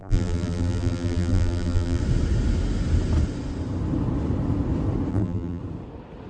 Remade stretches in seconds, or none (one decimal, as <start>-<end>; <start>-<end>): 0.0-2.0; 5.1-5.6